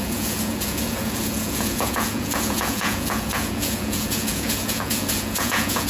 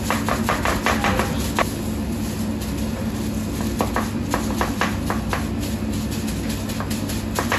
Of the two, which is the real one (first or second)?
second